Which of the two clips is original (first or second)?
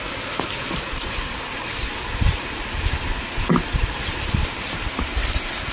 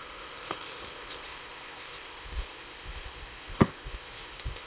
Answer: first